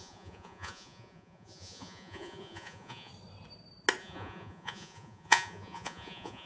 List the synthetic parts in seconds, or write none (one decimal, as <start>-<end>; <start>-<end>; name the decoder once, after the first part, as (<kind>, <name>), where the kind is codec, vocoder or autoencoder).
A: 0.0-3.1 (vocoder, Vocos); 4.0-6.5